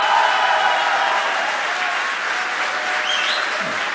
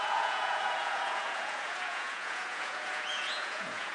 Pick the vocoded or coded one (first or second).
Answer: second